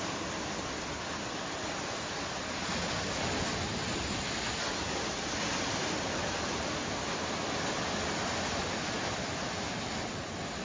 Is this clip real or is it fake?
real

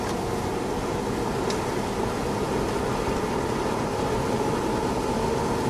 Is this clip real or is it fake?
real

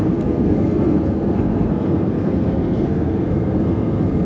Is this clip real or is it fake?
fake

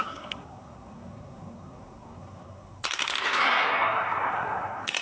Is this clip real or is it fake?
fake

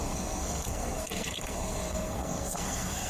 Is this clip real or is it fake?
fake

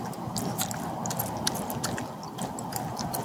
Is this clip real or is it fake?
real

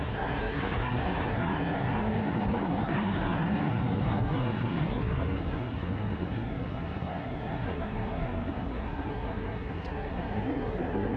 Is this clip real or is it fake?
fake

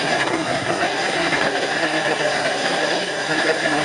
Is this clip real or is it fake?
fake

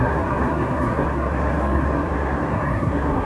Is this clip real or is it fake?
fake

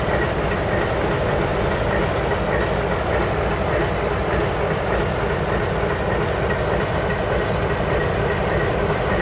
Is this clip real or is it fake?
real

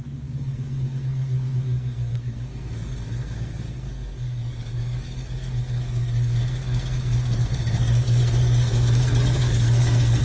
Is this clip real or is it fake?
fake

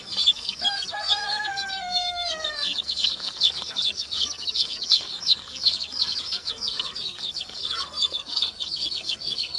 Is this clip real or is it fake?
fake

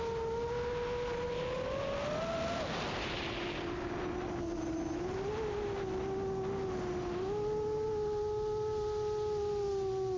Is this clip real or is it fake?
real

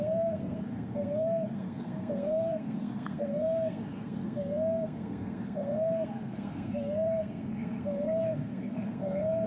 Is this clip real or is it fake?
fake